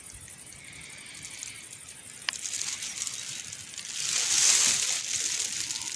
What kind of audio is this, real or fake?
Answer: real